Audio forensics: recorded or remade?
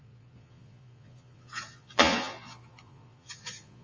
remade